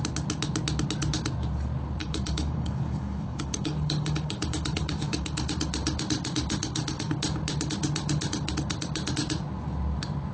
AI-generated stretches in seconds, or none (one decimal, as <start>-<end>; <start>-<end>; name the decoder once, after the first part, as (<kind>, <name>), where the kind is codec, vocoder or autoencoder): 2.0-5.5 (codec, DAC); 6.6-7.1